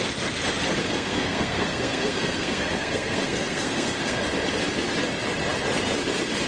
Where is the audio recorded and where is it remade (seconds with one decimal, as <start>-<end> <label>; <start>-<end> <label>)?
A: 0.0-0.8 recorded; 0.8-4.2 remade; 4.2-6.5 recorded